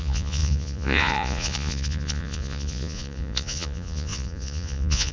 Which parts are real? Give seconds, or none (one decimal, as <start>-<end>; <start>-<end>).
none